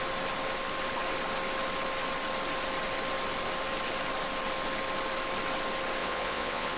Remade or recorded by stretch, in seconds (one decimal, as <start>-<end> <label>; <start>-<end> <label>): 0.0-6.0 recorded; 6.0-6.8 remade